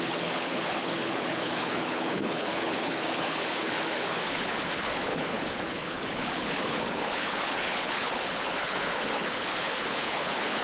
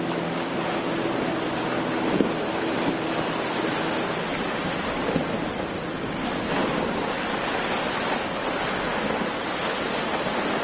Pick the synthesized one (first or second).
first